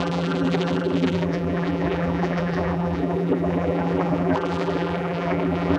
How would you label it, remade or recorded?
remade